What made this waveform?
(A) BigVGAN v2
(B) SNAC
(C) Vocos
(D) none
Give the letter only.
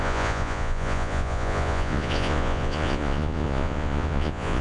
C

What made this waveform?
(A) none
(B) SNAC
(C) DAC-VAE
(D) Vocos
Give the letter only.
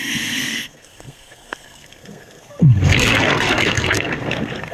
B